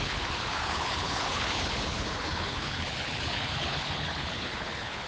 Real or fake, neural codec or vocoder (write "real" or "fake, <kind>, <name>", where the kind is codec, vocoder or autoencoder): fake, codec, HILCodec